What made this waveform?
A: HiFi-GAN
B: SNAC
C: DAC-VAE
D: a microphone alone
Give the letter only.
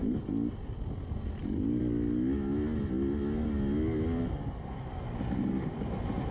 D